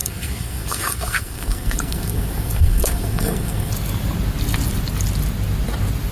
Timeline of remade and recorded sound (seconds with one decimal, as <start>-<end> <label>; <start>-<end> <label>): 0.0-3.7 remade; 3.7-6.1 recorded